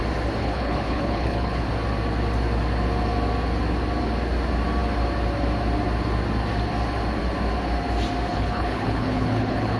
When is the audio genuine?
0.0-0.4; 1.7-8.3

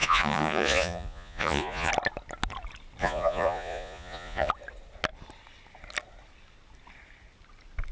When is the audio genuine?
1.9-3.0; 4.5-7.9

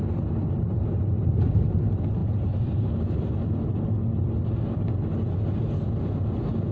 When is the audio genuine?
0.0-2.2; 3.2-6.7

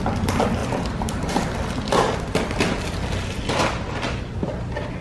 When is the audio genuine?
0.0-0.6; 1.3-5.0

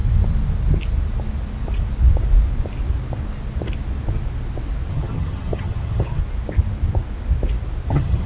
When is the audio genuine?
0.0-4.9; 6.2-7.9

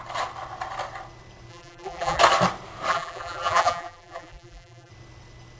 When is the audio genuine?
0.0-1.5; 2.2-2.9; 4.9-5.6

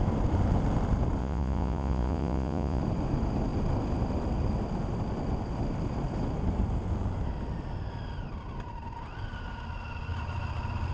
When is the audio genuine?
0.0-1.2; 2.8-10.9

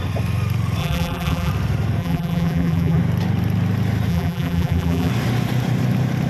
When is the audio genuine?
0.0-0.8; 1.5-2.0; 3.0-4.1; 5.1-6.3